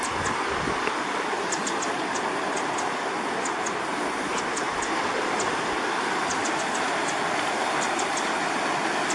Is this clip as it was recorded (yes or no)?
yes